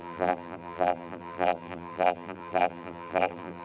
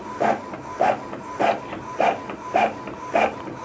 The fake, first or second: first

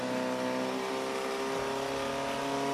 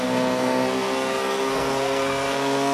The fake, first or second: second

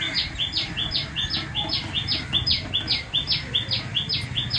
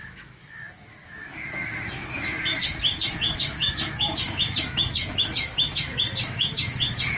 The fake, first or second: second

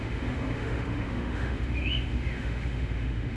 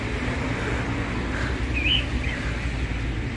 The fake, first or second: first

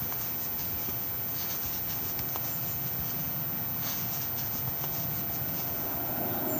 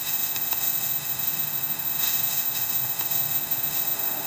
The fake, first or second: second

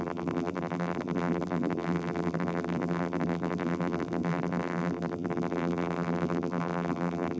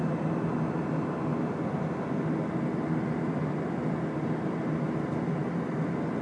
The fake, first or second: first